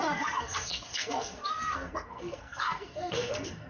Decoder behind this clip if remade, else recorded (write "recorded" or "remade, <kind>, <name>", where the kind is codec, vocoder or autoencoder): remade, codec, SNAC